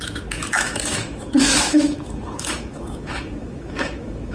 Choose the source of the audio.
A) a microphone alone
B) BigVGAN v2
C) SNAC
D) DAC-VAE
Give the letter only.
D